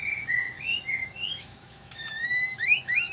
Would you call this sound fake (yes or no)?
yes